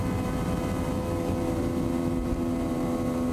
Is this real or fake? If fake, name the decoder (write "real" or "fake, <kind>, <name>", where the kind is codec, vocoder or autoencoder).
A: fake, vocoder, BigVGAN v2